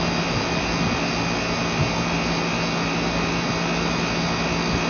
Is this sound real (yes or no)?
yes